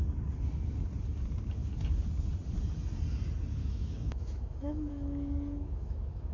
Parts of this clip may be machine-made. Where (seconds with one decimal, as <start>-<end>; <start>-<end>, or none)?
3.6-6.3